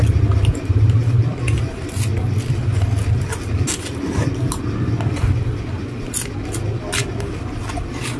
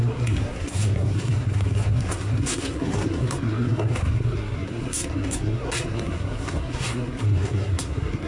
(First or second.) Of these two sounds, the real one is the first